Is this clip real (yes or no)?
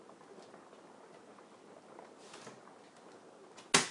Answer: yes